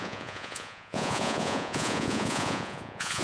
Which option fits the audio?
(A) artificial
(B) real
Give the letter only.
A